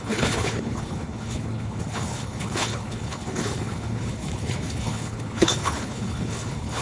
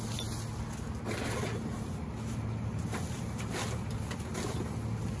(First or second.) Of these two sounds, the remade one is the first